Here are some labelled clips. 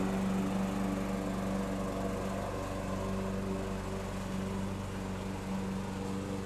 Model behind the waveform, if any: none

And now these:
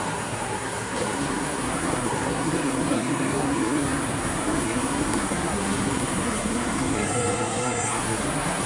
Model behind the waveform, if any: codec, SNAC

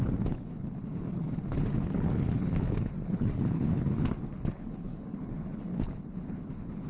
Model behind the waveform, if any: codec, HILCodec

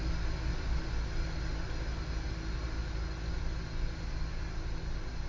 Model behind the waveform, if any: none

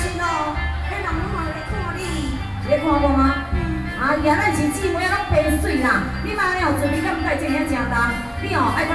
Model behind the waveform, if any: none